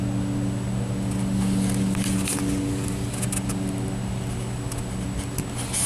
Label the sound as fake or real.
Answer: real